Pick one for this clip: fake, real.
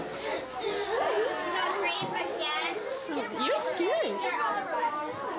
real